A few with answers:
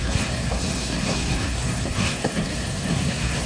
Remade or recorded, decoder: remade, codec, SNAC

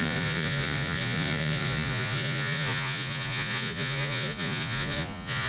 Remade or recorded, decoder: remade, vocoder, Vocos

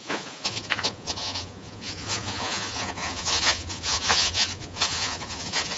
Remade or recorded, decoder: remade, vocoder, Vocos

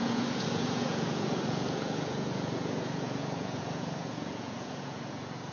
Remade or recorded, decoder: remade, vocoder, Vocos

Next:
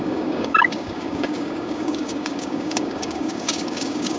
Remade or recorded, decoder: remade, codec, DAC